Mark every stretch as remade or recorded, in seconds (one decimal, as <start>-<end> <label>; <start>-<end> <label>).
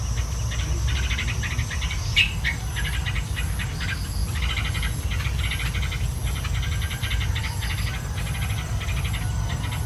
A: 0.0-9.9 recorded